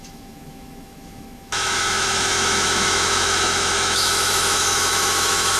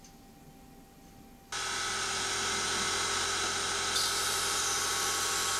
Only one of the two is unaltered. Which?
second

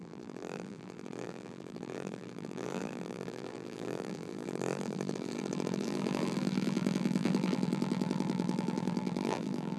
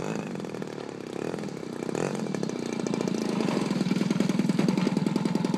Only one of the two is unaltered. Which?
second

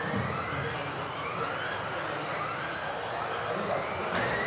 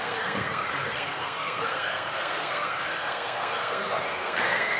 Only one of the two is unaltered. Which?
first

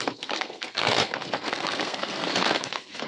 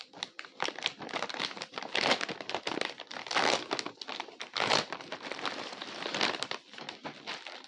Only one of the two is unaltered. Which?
second